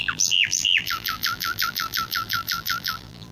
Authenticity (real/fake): fake